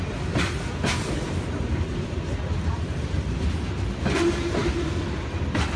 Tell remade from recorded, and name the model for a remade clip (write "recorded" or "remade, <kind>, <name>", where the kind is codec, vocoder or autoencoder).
recorded